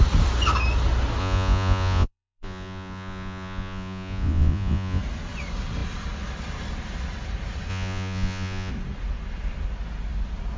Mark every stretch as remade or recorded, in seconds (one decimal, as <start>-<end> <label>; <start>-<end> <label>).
0.0-1.2 recorded; 1.2-5.0 remade; 5.0-7.7 recorded; 7.7-8.7 remade; 8.7-10.6 recorded